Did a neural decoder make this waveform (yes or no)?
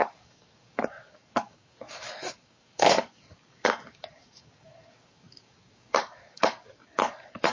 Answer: yes